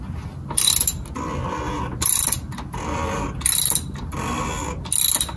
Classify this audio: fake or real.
real